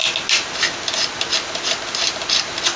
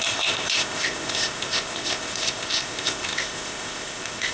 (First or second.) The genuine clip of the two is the first